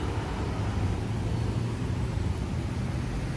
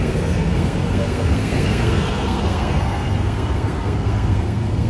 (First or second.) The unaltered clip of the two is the first